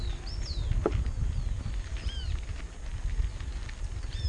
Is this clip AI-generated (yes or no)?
no